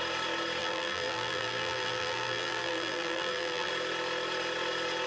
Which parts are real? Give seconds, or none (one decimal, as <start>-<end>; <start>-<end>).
0.0-0.6; 3.7-5.1